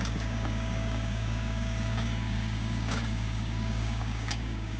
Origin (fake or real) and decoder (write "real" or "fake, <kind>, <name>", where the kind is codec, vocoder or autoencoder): fake, codec, DAC